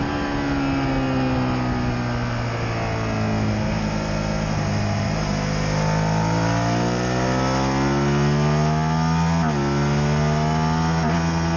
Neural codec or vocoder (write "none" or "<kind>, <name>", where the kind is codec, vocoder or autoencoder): none